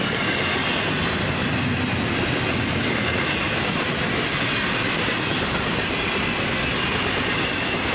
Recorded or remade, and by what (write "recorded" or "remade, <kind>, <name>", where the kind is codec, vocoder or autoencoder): recorded